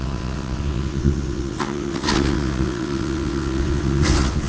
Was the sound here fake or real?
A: fake